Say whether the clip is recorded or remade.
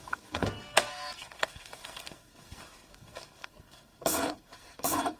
remade